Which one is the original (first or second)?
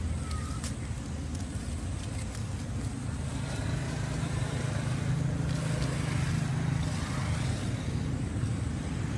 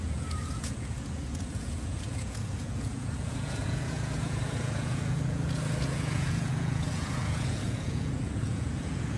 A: first